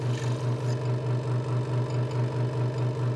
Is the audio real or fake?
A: real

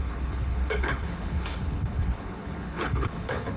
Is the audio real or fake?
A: fake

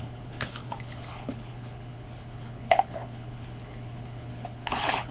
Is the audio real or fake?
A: fake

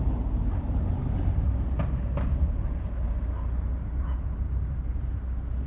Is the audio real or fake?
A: real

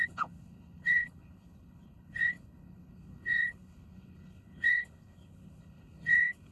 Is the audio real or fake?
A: fake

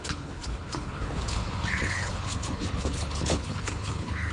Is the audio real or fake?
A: fake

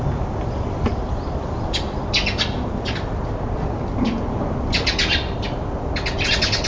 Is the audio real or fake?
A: real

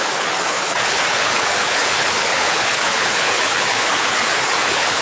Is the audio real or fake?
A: fake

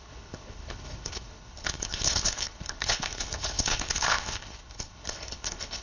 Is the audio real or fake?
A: fake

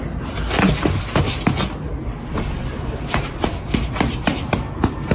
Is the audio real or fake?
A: real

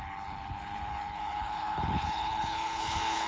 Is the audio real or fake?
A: fake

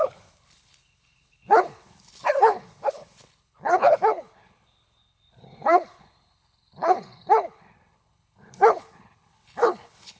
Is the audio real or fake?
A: fake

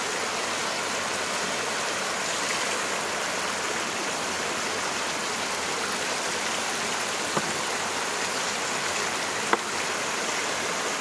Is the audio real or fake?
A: real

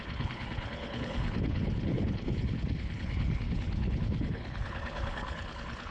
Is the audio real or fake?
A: fake